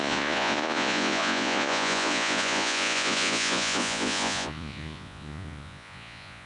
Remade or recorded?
remade